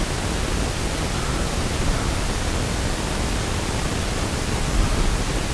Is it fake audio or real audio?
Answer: real